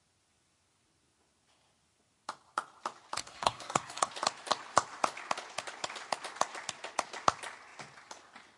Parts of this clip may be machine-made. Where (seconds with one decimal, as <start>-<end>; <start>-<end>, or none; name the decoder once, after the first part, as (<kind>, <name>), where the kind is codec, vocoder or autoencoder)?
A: 3.2-4.1 (codec, SNAC)